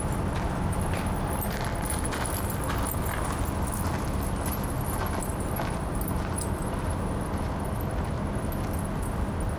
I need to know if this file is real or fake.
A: real